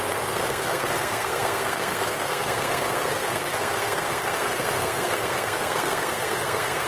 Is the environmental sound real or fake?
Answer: fake